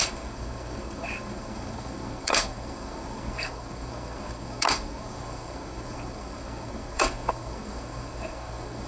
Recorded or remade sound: remade